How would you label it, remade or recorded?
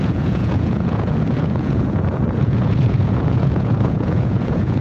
remade